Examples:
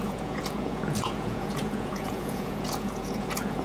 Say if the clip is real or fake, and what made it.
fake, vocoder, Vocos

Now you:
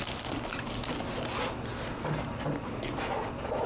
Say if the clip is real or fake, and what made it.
real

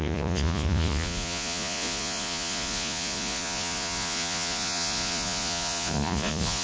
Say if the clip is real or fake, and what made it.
fake, vocoder, Vocos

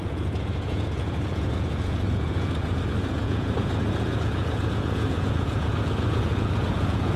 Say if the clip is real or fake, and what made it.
fake, vocoder, Vocos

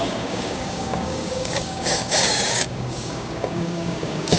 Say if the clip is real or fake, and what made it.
fake, codec, DAC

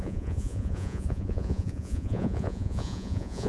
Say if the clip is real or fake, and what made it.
fake, vocoder, Vocos